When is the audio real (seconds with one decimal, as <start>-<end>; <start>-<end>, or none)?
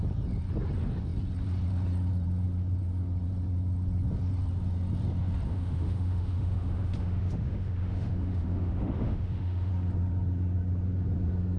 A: 0.0-5.5; 9.7-11.6